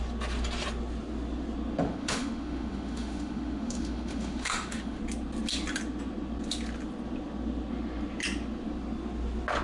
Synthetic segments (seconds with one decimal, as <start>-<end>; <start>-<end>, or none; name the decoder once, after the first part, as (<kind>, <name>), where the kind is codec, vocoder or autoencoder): 1.8-5.0 (autoencoder, DAC-VAE)